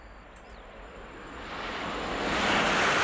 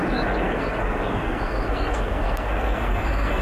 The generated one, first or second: second